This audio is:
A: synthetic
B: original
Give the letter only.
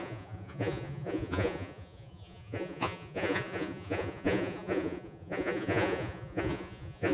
A